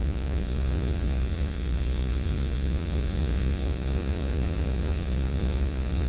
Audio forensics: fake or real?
fake